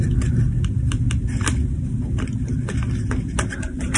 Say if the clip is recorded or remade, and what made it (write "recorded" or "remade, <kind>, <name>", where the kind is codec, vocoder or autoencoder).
recorded